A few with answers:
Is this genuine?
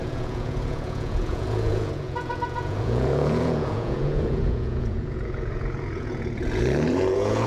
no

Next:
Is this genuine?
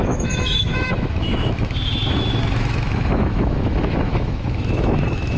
no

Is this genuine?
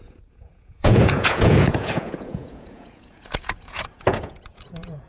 no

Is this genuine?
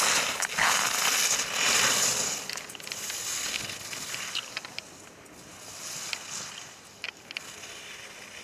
yes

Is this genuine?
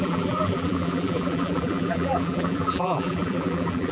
no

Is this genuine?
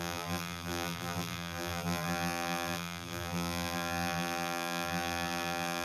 no